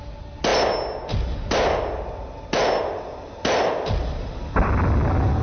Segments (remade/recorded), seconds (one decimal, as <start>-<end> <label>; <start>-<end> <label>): 0.0-5.4 recorded